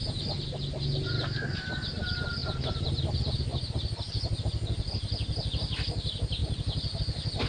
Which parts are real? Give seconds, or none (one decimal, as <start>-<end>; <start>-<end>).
0.0-3.5; 4.4-7.5